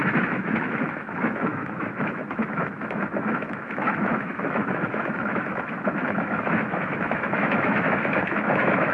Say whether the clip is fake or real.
fake